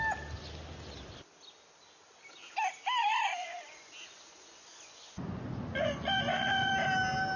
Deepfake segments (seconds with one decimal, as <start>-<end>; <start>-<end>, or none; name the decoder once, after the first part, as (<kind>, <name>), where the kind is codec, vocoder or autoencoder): 3.0-6.7 (vocoder, Vocos)